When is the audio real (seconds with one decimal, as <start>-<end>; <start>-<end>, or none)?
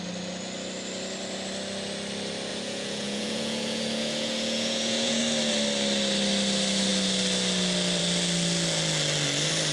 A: 0.0-2.5; 5.2-9.7